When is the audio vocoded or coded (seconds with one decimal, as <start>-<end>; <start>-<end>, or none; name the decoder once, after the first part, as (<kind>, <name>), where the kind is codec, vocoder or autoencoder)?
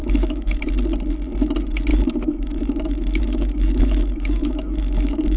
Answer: 0.0-0.7 (autoencoder, DAC-VAE); 1.9-5.4